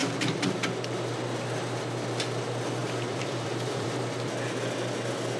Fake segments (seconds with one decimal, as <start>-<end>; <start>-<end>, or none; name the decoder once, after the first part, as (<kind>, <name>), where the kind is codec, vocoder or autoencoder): 0.0-0.5 (vocoder, BigVGAN v2); 2.8-4.0